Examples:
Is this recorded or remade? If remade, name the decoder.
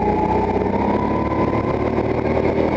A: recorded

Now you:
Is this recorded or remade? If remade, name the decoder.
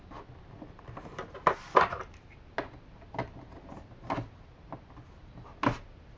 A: recorded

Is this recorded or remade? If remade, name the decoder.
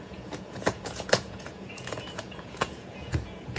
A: remade, vocoder, Vocos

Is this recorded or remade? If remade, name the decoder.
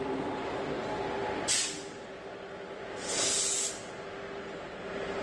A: recorded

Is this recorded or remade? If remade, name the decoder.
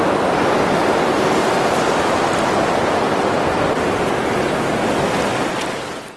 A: recorded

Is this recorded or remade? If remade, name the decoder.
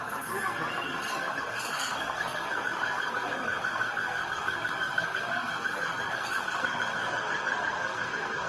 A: remade, codec, SNAC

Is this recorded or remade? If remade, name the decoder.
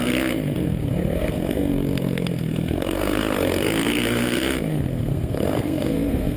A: remade, codec, SNAC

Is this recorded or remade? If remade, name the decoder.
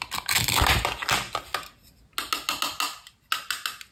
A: recorded